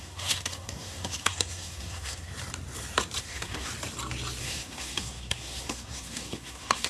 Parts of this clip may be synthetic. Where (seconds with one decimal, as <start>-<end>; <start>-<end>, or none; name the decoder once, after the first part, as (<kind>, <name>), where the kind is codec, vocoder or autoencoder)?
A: 0.0-2.3 (codec, SNAC); 3.2-3.7; 4.4-6.9